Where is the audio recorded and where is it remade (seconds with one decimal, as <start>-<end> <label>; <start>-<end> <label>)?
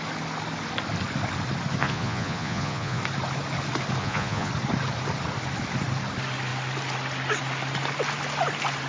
0.0-1.8 recorded; 1.8-3.0 remade; 3.0-4.0 recorded; 4.0-4.5 remade; 4.5-8.9 recorded